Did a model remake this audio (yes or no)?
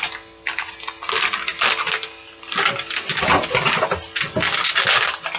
no